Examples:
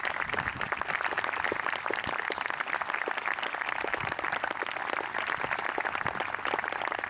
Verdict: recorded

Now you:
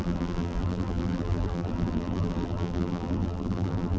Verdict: remade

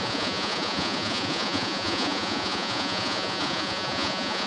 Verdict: remade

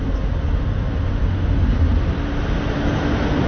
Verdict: recorded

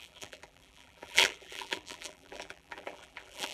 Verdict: remade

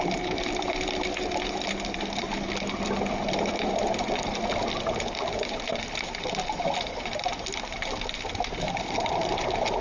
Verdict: remade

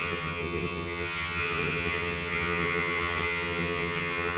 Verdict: remade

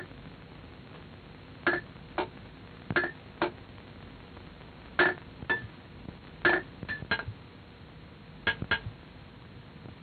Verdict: recorded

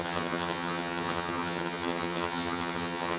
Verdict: remade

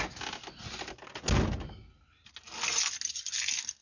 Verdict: recorded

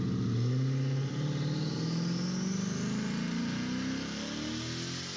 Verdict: recorded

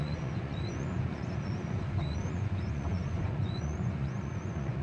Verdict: remade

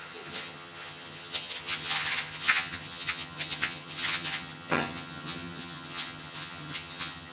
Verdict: remade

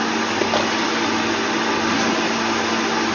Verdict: recorded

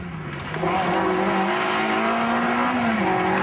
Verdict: recorded